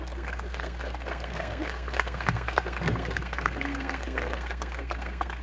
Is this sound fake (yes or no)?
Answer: yes